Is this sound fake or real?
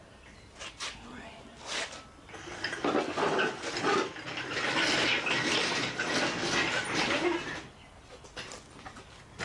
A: real